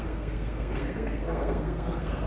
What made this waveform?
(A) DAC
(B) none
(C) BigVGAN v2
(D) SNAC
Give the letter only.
D